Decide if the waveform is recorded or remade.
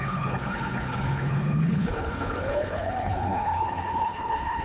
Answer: remade